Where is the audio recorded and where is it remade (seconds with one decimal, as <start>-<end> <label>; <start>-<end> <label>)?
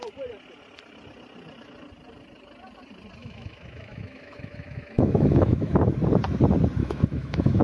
0.0-3.2 recorded; 3.2-5.9 remade; 5.9-6.8 recorded; 6.8-7.6 remade